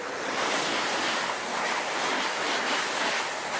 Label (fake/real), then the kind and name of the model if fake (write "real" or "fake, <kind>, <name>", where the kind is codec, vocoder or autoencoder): real